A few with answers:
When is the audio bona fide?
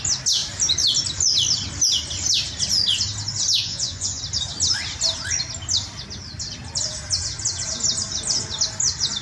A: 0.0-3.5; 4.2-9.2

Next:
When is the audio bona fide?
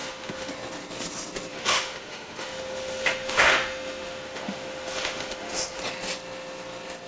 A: 0.5-1.5; 5.8-7.1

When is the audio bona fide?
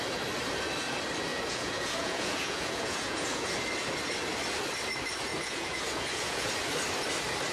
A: 0.0-1.3; 3.5-5.3; 6.5-7.5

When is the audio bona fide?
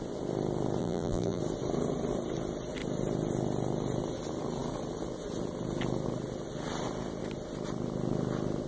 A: 0.0-0.8; 1.4-8.7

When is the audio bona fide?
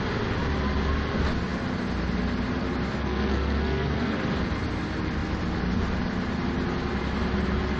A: 0.0-3.0; 4.2-7.8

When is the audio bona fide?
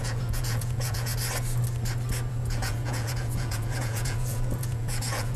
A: 1.1-2.3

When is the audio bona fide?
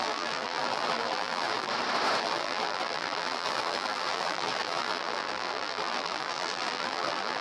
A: 1.7-2.2